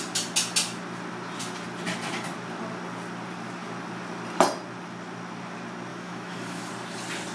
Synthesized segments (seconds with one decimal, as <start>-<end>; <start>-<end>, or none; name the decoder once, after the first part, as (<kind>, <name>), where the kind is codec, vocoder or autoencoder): 5.9-6.7 (autoencoder, DAC-VAE)